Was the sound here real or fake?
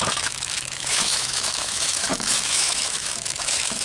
fake